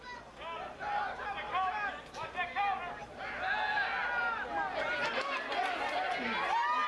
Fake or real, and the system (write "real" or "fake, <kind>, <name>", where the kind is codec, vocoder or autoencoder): real